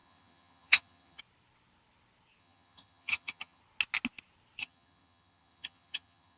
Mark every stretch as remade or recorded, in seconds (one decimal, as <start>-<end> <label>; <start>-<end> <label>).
0.0-1.2 remade; 1.2-2.4 recorded; 2.4-3.6 remade; 3.6-4.6 recorded; 4.6-6.4 remade